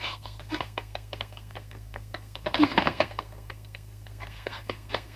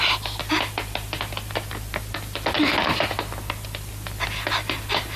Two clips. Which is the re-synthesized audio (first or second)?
first